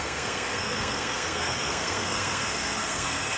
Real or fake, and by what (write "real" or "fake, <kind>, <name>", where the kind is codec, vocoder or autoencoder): fake, codec, SNAC